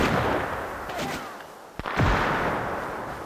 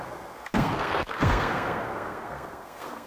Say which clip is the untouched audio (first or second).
first